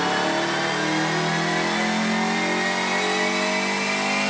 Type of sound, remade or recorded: recorded